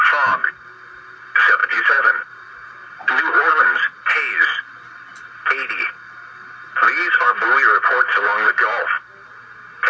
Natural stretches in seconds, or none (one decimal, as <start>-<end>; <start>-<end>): 0.0-1.6; 3.2-9.9